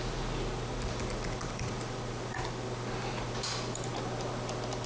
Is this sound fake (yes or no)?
no